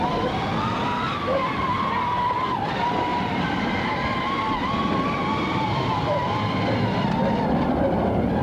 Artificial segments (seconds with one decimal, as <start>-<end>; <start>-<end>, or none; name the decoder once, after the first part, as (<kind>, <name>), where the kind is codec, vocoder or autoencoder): 3.1-3.9 (vocoder, BigVGAN v2)